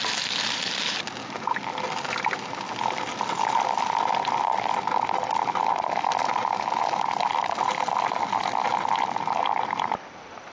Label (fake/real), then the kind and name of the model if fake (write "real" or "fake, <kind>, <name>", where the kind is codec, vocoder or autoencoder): real